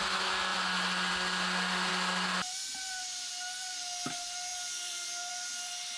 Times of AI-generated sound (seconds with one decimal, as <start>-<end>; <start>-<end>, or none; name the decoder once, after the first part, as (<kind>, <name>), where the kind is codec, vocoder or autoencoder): none